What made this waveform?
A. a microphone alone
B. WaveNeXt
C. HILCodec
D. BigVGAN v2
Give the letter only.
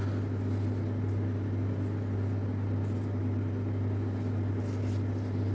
A